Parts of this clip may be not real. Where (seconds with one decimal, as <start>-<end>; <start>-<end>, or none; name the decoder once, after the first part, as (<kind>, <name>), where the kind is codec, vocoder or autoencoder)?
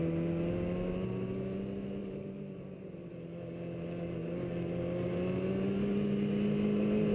2.0-3.1 (vocoder, BigVGAN v2)